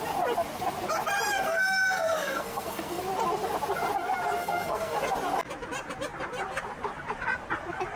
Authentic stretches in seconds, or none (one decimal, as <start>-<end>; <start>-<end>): 0.0-1.3; 3.0-4.4; 5.0-8.0